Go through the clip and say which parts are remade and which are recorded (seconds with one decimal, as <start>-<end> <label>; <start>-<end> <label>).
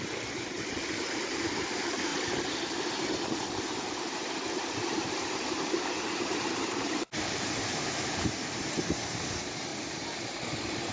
0.0-2.1 remade; 2.1-3.3 recorded; 3.3-9.7 remade; 9.7-10.9 recorded